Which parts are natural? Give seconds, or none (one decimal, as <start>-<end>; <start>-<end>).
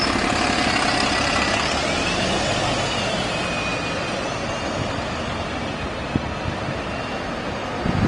0.0-8.1